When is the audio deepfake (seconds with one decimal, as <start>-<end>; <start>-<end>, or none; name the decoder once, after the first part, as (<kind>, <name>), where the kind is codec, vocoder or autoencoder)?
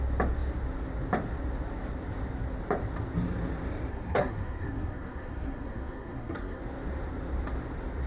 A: 3.9-6.6 (codec, SNAC)